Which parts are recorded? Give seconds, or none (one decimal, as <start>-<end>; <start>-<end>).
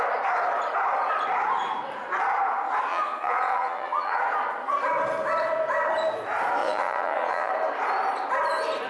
0.0-2.9; 4.2-6.6; 7.5-8.9